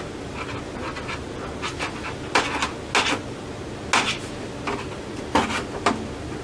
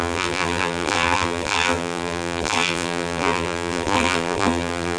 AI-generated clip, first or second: second